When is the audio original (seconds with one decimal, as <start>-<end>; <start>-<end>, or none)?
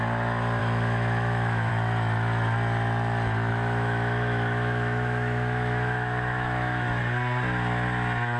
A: 0.0-0.6; 1.7-3.5; 7.0-8.4